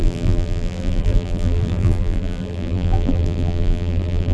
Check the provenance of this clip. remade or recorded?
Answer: remade